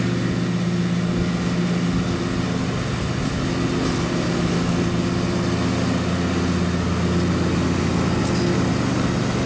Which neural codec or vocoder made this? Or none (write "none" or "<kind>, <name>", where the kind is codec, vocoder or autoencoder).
none